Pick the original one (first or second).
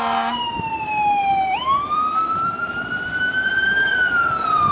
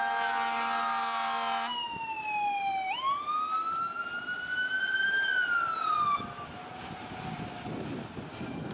second